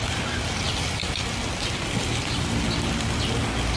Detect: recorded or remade recorded